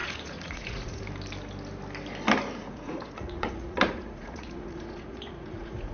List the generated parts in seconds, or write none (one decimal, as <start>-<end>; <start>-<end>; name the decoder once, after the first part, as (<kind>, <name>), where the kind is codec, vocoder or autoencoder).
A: 0.0-1.0 (vocoder, Vocos); 2.6-5.9